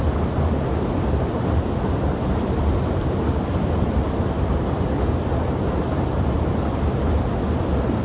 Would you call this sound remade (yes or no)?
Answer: no